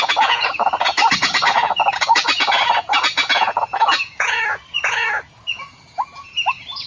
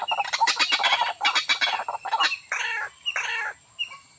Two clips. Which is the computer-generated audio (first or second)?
first